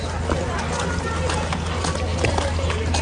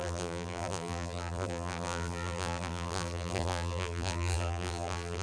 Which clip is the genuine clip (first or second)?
first